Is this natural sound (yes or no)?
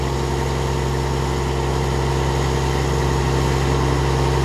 yes